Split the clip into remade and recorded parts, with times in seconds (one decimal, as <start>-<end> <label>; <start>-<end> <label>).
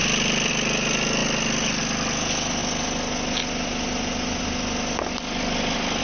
0.0-6.0 recorded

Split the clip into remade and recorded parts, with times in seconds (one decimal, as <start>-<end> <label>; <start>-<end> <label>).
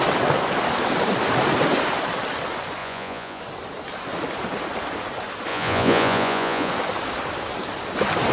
0.0-2.8 recorded; 2.8-3.4 remade; 3.4-5.5 recorded; 5.5-6.7 remade; 6.7-8.3 recorded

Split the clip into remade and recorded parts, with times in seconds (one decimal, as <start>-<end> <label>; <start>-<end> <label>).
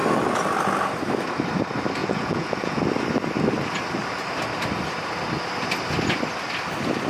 0.0-2.0 recorded; 2.0-2.8 remade; 2.8-7.1 recorded